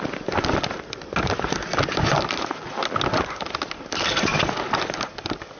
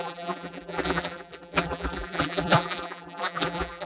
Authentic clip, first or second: first